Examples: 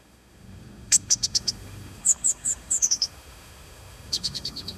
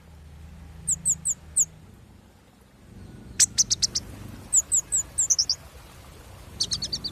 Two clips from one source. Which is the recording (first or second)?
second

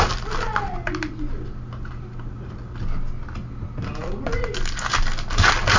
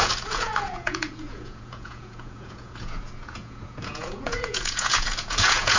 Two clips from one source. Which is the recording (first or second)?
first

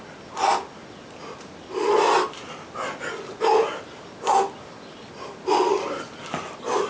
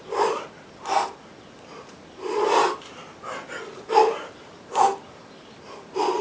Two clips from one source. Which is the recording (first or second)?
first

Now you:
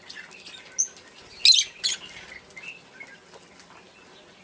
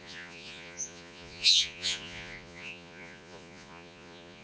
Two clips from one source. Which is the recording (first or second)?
first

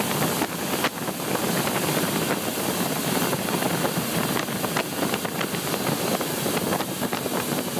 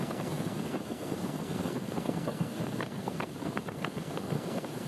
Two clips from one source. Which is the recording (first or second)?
first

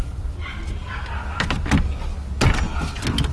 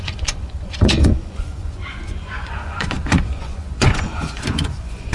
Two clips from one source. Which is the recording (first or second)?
first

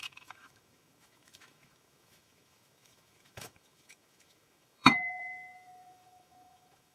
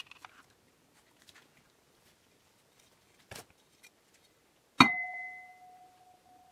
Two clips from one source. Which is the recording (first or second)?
second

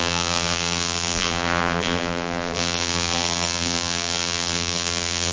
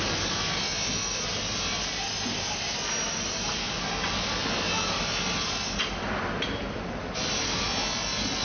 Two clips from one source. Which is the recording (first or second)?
second